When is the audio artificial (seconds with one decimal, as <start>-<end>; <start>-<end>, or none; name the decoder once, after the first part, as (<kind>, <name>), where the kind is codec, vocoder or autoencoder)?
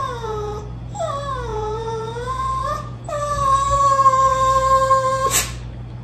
0.0-0.6 (vocoder, Vocos); 1.5-3.1